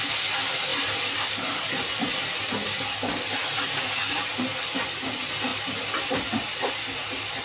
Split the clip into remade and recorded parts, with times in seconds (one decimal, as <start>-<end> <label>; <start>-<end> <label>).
0.0-7.4 recorded